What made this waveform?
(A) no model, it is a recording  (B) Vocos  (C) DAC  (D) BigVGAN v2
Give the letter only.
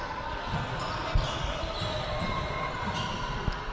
A